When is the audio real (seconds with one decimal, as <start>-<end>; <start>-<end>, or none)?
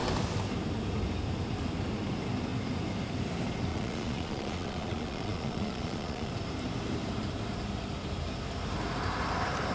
0.0-3.7; 6.3-9.7